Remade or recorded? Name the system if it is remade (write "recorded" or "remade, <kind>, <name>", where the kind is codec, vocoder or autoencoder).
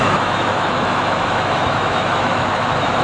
remade, autoencoder, DAC-VAE